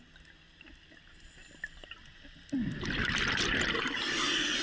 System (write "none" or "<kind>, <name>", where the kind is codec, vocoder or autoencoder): none